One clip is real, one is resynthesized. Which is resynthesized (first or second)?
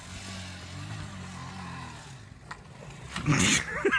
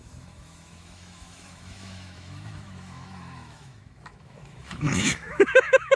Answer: second